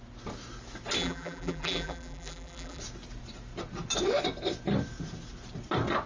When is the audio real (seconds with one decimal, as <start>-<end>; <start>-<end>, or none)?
0.0-1.0; 2.8-6.1

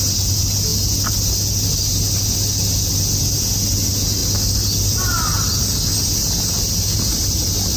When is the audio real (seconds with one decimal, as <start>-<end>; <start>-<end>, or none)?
0.0-7.8

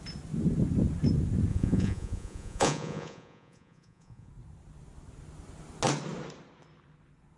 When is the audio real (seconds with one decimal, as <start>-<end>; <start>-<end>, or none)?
0.0-1.5; 4.3-7.4

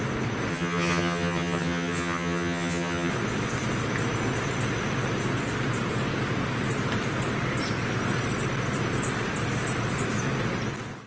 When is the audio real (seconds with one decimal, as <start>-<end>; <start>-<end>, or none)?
0.0-0.5; 3.1-11.1